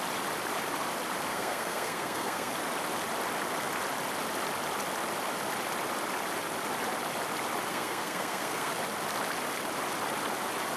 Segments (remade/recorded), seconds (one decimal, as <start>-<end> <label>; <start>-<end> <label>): 0.0-1.3 recorded; 1.3-2.5 remade; 2.5-7.7 recorded; 7.7-8.7 remade; 8.7-10.8 recorded